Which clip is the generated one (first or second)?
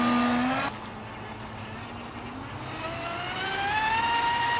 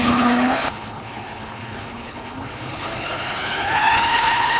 second